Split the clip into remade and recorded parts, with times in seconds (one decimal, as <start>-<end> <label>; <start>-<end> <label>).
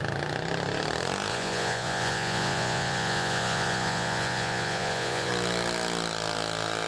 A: 0.0-1.3 recorded; 1.3-5.3 remade; 5.3-6.9 recorded